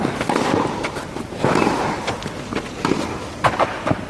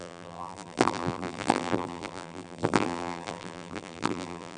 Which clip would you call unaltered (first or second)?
first